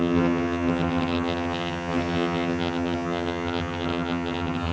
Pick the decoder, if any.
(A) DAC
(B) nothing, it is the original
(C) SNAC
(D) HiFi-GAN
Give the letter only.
D